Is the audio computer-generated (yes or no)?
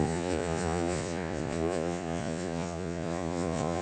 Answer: yes